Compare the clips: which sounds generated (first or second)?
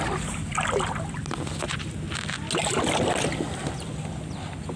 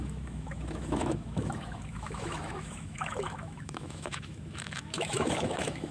second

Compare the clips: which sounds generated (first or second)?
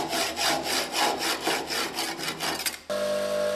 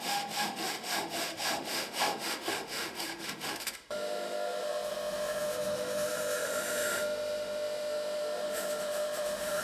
second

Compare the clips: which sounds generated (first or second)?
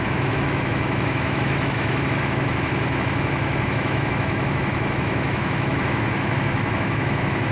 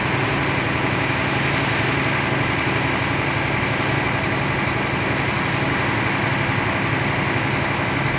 first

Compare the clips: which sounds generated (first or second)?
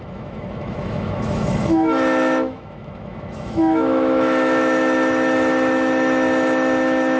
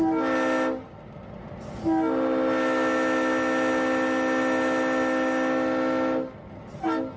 first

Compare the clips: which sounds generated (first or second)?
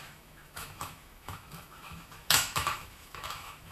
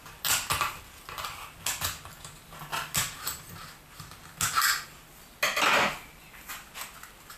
first